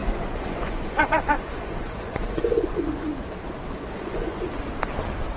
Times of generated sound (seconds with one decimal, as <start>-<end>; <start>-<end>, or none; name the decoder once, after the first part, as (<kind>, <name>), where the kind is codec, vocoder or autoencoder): 0.0-3.2 (vocoder, Vocos); 3.7-4.5